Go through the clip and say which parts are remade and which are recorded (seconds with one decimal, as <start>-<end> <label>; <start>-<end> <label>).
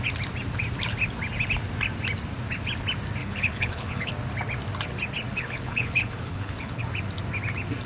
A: 0.0-3.2 recorded; 3.2-4.1 remade; 4.1-5.3 recorded; 5.3-6.8 remade; 6.8-7.9 recorded